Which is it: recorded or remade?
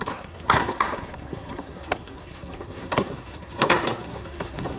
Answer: remade